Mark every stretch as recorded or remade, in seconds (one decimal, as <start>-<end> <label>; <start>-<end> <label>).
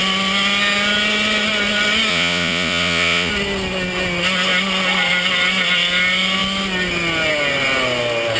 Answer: 0.0-2.1 recorded; 2.1-3.3 remade; 3.3-8.4 recorded